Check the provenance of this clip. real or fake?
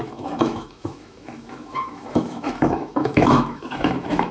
fake